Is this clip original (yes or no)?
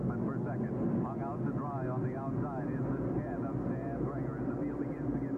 yes